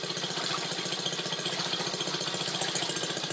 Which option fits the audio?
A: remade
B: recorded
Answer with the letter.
B